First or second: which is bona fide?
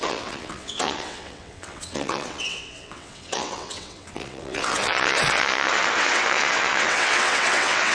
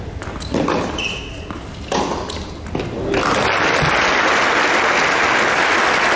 second